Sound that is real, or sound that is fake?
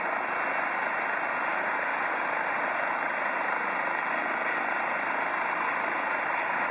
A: real